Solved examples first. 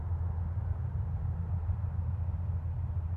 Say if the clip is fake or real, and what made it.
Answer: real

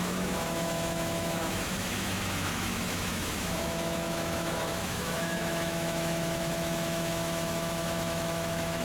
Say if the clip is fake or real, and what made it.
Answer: fake, autoencoder, DAC-VAE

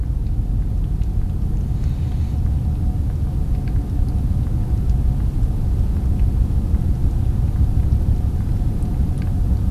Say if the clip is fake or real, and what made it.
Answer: real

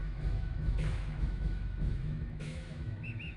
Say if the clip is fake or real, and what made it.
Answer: fake, autoencoder, DAC-VAE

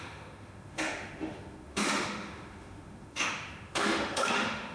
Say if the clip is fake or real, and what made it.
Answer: fake, autoencoder, DAC-VAE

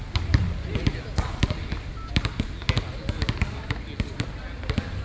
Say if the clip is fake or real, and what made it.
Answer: real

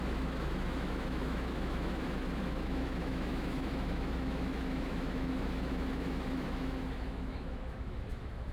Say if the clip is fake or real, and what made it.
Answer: fake, autoencoder, DAC-VAE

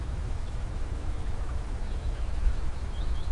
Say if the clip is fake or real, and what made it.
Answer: fake, autoencoder, DAC-VAE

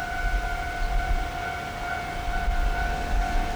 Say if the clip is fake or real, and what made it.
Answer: real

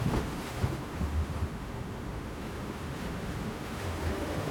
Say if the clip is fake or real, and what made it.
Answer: fake, autoencoder, DAC-VAE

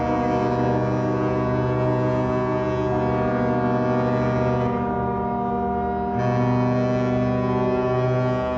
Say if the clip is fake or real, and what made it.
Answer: real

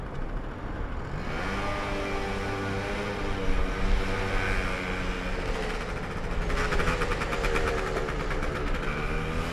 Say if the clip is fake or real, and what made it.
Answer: real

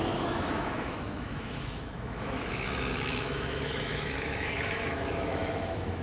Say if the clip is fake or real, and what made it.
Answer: fake, autoencoder, DAC-VAE